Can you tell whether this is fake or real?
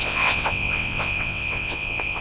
fake